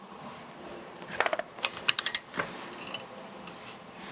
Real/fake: fake